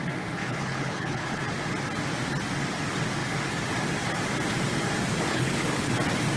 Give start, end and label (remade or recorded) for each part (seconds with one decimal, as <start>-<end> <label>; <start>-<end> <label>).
0.0-0.4 recorded; 0.4-1.4 remade; 1.4-5.3 recorded; 5.3-5.9 remade; 5.9-6.4 recorded